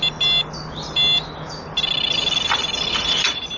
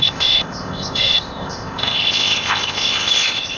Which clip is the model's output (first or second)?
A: second